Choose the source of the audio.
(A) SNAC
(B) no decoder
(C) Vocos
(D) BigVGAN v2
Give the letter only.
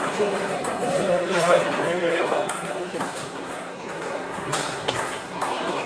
A